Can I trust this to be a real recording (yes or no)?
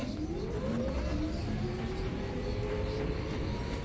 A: yes